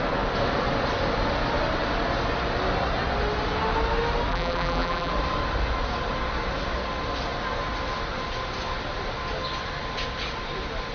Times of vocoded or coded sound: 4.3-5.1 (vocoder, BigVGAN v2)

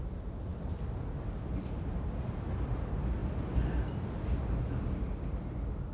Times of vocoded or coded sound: none

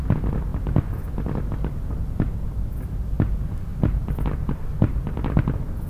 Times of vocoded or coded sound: none

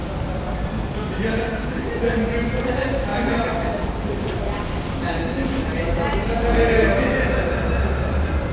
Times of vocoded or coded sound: none